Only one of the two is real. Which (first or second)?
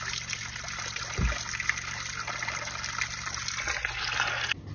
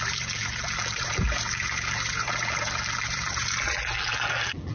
first